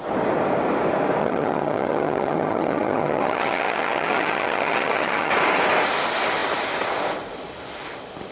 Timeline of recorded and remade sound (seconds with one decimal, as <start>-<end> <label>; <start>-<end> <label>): 0.0-1.2 recorded; 1.2-5.3 remade; 5.3-8.3 recorded